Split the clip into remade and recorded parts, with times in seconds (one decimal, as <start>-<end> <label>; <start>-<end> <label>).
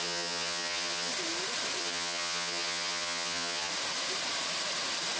0.0-1.1 remade; 1.1-1.8 recorded; 1.8-3.7 remade; 3.7-5.2 recorded